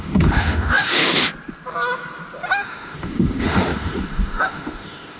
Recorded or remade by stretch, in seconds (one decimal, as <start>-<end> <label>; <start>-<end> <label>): 0.0-1.2 remade; 1.2-2.5 recorded; 2.5-5.2 remade